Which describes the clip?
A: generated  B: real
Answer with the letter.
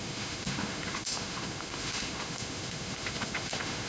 A